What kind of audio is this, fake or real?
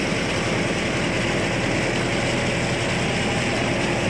real